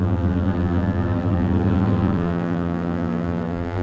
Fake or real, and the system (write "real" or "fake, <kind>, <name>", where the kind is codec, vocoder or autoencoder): fake, vocoder, BigVGAN v2